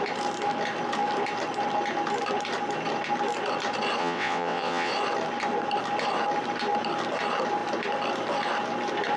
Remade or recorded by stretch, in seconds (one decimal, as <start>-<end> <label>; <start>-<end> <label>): 0.0-4.0 recorded; 4.0-4.9 remade; 4.9-9.2 recorded